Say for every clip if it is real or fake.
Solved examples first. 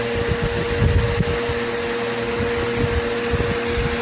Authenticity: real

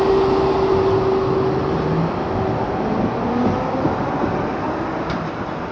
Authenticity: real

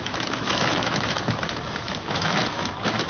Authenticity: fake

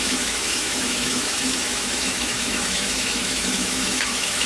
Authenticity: fake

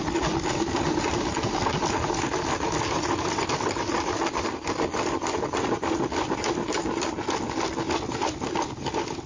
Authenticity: real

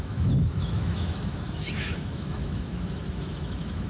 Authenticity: fake